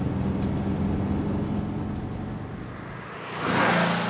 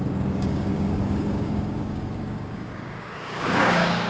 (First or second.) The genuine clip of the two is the first